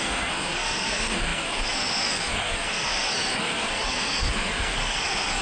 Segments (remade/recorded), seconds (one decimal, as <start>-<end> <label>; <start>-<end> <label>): 0.0-5.4 remade